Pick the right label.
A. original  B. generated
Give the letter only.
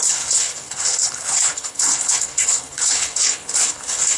B